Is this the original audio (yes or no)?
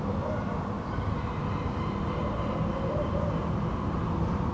yes